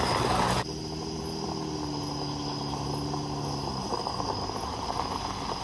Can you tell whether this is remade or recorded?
recorded